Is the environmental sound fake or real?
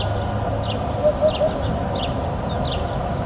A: real